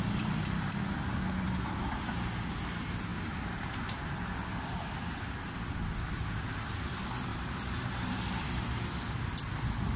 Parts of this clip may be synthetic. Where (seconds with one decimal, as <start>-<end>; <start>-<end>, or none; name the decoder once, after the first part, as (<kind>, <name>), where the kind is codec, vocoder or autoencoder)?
3.1-4.1 (vocoder, BigVGAN v2); 7.3-8.6